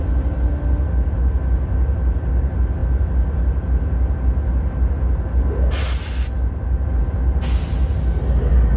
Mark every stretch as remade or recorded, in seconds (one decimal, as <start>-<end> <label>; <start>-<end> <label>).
0.0-8.8 recorded